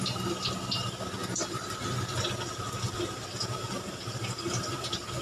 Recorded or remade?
recorded